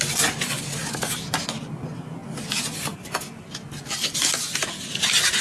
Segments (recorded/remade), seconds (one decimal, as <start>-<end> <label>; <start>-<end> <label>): 0.0-5.4 recorded